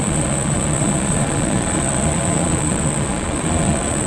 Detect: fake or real fake